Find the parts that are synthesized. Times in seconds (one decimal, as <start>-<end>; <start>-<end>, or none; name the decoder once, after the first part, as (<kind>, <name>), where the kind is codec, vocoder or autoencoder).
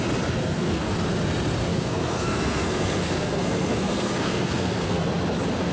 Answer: 0.4-0.9 (codec, SNAC); 1.7-5.1